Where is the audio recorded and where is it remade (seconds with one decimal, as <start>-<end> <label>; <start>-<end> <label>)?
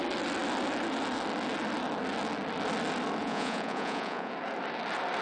0.0-3.2 recorded; 3.2-4.3 remade; 4.3-5.2 recorded